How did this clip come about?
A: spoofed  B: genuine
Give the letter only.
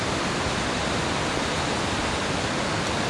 B